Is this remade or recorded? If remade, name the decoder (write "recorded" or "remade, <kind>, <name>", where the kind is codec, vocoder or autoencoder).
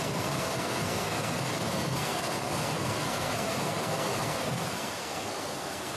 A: remade, codec, SNAC